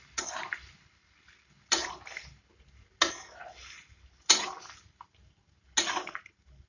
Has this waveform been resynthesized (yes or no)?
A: no